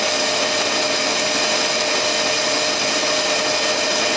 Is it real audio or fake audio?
real